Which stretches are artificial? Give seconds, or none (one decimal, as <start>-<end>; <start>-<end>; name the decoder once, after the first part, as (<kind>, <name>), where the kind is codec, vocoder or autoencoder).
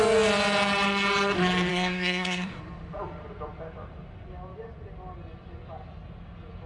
1.7-2.6 (codec, SNAC)